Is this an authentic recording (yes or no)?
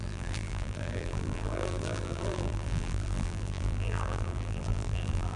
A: no